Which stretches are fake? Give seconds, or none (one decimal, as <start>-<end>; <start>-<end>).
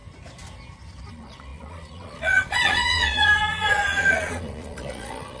1.1-5.4